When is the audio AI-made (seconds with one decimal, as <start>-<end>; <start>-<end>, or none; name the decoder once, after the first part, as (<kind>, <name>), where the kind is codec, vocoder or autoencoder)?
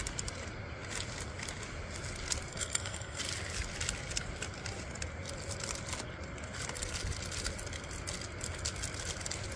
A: 2.5-3.2 (codec, SNAC)